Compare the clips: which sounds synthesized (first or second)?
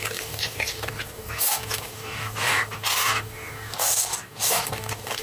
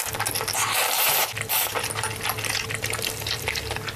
first